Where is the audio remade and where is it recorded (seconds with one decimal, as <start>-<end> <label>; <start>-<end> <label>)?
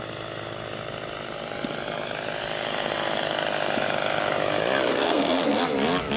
0.0-4.9 recorded; 4.9-5.6 remade; 5.6-6.2 recorded